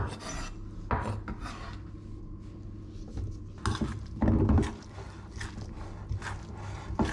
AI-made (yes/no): no